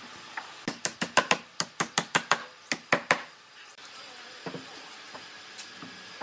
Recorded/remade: recorded